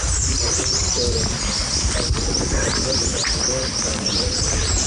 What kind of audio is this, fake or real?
real